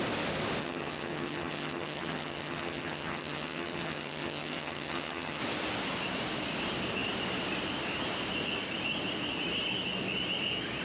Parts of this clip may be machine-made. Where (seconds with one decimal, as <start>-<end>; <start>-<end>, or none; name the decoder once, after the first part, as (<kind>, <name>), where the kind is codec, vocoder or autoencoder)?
0.6-5.4 (vocoder, HiFi-GAN)